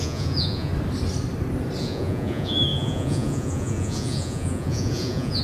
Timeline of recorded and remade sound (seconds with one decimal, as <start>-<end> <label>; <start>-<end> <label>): 0.0-0.7 remade; 0.7-1.8 recorded; 1.8-5.4 remade